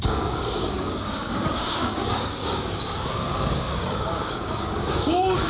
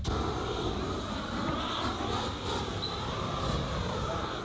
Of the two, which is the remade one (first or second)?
first